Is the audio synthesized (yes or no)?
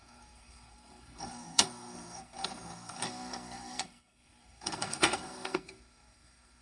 yes